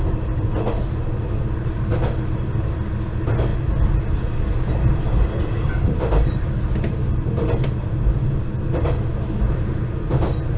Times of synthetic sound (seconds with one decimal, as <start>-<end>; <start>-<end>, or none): none